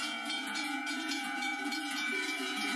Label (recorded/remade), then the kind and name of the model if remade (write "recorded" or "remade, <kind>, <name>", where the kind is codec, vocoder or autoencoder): remade, vocoder, Vocos